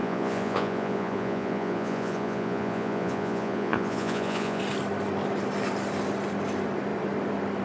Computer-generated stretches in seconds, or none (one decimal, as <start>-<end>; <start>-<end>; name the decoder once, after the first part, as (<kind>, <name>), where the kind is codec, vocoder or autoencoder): 0.0-4.6 (vocoder, Vocos)